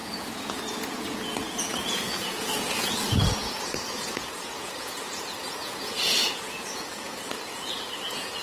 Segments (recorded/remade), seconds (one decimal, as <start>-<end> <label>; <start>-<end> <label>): 0.0-8.4 remade